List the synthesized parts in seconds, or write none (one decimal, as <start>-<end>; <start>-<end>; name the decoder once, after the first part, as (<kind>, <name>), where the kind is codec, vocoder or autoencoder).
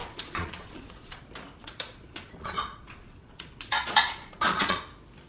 0.0-1.2 (vocoder, Vocos); 1.6-4.8